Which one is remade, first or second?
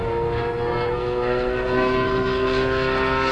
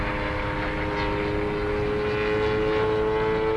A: first